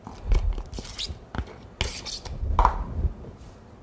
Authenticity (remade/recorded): recorded